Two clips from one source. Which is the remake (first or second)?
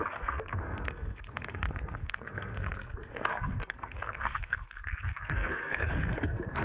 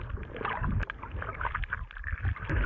first